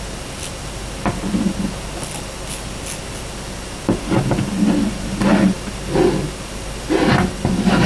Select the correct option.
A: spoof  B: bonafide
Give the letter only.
B